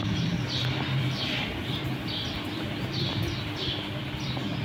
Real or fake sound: fake